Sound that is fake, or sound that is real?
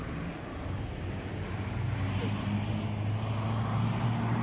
real